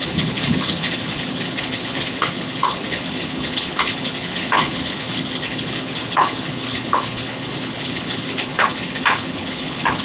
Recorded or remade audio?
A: remade